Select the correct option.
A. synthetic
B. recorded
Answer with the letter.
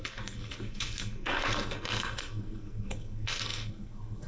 A